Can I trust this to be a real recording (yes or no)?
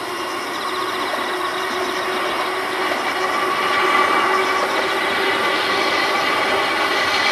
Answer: yes